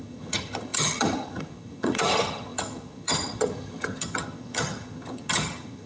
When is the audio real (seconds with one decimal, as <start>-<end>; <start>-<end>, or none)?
none